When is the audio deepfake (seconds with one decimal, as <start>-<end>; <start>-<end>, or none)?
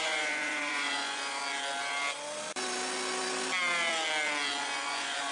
0.0-1.4; 4.6-5.3